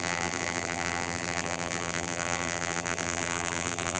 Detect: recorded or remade remade